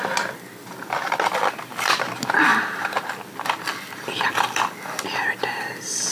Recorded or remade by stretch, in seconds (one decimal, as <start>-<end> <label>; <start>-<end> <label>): 0.0-6.1 recorded